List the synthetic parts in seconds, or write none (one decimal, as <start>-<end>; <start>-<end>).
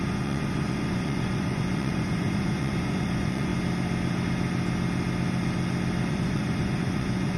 0.0-3.5; 6.1-7.4